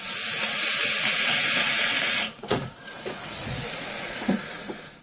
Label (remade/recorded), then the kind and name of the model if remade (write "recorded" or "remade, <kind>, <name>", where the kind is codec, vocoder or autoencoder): remade, vocoder, Vocos